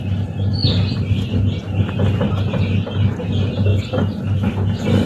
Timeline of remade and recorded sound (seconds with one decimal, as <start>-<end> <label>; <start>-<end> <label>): 0.0-5.1 recorded